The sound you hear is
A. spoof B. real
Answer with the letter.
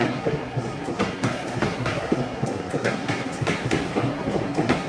A